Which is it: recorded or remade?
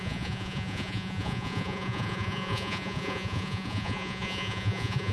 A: remade